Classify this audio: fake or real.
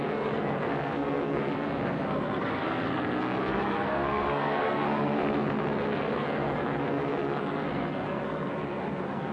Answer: fake